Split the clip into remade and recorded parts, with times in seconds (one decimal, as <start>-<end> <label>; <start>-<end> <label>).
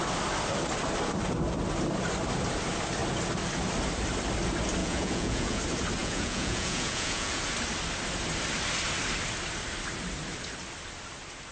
0.0-4.8 recorded; 4.8-5.6 remade; 5.6-6.0 recorded; 6.0-7.4 remade; 7.4-11.5 recorded